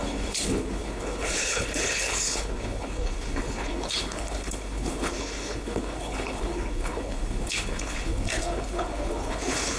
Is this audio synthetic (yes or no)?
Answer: yes